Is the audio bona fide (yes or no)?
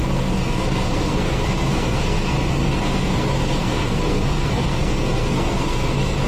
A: no